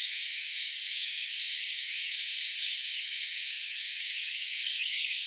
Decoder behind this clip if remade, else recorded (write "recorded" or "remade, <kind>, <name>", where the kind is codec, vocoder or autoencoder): remade, codec, SNAC